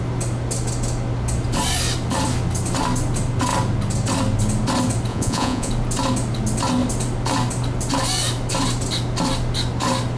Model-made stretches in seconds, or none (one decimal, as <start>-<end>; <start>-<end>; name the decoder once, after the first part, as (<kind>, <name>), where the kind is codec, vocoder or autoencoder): 5.1-5.7 (vocoder, Vocos)